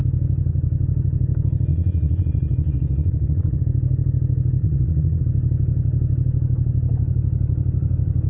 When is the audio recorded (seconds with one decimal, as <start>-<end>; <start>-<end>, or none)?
0.0-1.7; 3.6-4.6; 5.2-8.3